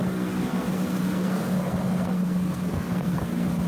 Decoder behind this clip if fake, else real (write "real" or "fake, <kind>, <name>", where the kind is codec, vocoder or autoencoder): fake, codec, SNAC